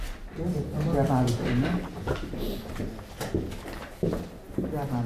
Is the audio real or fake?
real